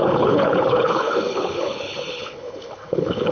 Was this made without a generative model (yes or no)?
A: no